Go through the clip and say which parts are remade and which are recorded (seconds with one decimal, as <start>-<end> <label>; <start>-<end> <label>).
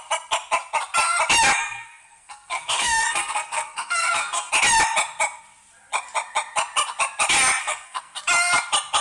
0.0-1.6 recorded; 1.6-4.5 remade; 4.5-7.6 recorded; 7.6-8.2 remade; 8.2-9.0 recorded